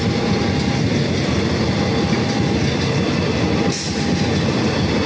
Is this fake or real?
real